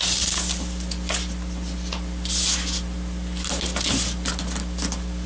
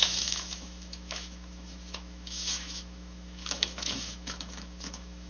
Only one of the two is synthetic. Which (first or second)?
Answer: second